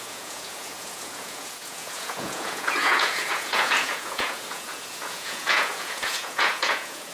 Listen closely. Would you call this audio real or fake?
fake